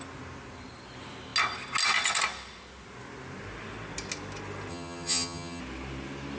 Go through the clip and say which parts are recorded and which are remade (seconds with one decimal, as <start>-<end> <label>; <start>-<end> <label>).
0.0-4.7 recorded; 4.7-5.6 remade; 5.6-6.4 recorded